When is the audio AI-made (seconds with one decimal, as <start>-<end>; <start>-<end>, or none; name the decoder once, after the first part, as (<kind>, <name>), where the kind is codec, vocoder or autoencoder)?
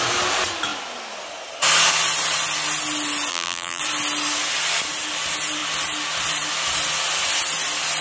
3.3-3.8 (vocoder, BigVGAN v2)